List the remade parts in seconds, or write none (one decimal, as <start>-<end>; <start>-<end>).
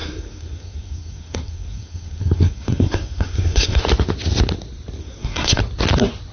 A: 0.0-3.8; 5.0-5.6